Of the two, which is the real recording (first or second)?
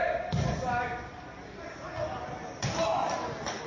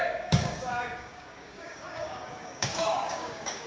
first